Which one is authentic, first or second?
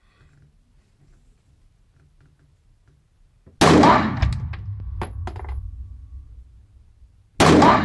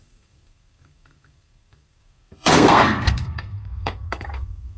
first